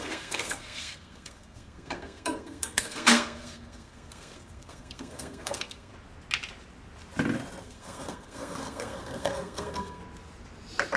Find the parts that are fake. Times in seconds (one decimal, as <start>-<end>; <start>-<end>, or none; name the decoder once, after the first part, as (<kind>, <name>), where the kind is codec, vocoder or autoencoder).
0.0-5.9 (codec, SNAC); 7.6-10.0